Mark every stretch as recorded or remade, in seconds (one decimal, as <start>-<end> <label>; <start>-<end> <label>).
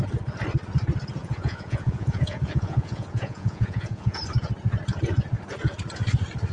0.0-1.2 recorded; 1.2-4.2 remade; 4.2-6.5 recorded